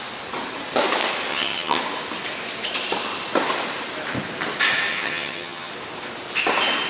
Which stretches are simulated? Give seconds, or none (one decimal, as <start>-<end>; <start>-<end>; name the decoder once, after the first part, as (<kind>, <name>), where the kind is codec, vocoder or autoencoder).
1.3-1.8 (vocoder, HiFi-GAN); 4.9-5.7